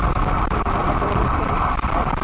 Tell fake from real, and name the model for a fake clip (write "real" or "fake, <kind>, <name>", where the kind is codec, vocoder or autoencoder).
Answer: fake, vocoder, BigVGAN v2